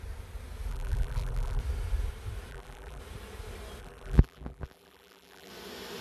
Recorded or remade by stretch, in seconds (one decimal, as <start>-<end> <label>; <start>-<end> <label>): 0.0-0.7 recorded; 0.7-1.6 remade; 1.6-2.5 recorded; 2.5-3.0 remade; 3.0-3.8 recorded; 3.8-5.5 remade; 5.5-6.0 recorded